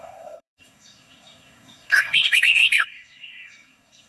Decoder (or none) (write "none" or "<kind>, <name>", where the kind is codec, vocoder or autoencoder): codec, SNAC